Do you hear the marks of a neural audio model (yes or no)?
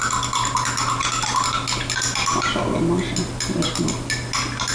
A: no